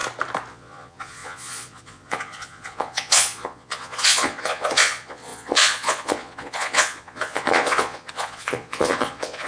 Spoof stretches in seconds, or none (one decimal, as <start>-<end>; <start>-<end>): 0.5-9.5